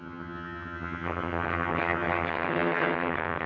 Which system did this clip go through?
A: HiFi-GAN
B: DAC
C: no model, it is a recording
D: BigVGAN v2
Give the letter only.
A